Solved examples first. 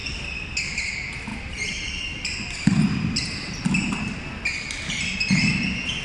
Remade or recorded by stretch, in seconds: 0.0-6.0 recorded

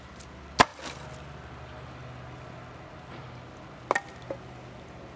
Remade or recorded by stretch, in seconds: 0.0-5.2 recorded

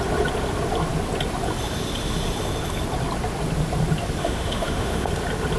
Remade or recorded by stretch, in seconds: 0.0-4.2 recorded; 4.2-5.1 remade; 5.1-5.6 recorded

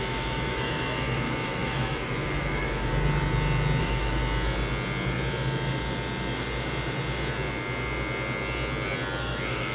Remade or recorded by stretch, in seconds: 0.0-2.9 remade; 2.9-3.8 recorded; 3.8-4.2 remade; 4.2-9.2 recorded; 9.2-9.7 remade

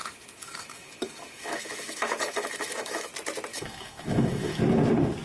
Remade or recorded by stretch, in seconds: 0.0-3.1 remade; 3.1-3.5 recorded; 3.5-4.6 remade; 4.6-5.2 recorded

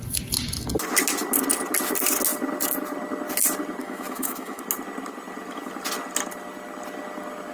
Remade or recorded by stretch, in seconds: 0.0-3.8 recorded; 3.8-4.6 remade; 4.6-7.5 recorded

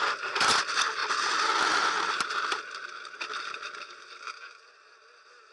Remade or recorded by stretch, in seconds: 0.0-5.5 recorded

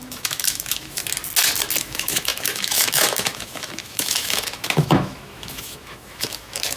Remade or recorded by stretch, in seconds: 0.0-1.0 remade; 1.0-1.8 recorded; 1.8-6.8 remade